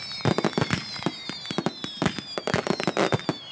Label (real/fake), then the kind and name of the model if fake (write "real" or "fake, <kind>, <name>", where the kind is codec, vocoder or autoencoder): real